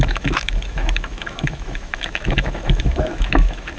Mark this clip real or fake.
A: fake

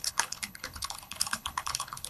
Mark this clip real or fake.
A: fake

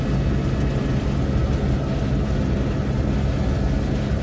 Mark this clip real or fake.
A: real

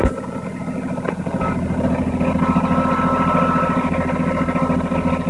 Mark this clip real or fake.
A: real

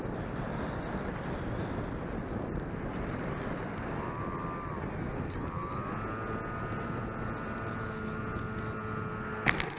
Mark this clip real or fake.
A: real